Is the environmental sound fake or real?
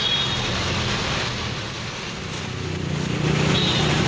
real